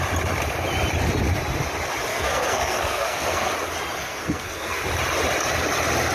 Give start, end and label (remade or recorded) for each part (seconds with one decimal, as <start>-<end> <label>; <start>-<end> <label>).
0.0-2.1 recorded; 2.1-3.5 remade; 3.5-4.0 recorded; 4.0-4.8 remade; 4.8-6.1 recorded